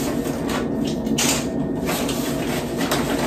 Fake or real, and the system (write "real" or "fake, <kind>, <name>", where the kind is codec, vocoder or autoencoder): real